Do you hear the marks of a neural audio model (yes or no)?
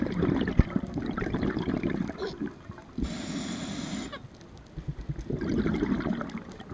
no